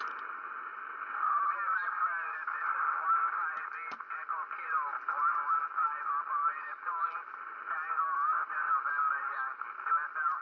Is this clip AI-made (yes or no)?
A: no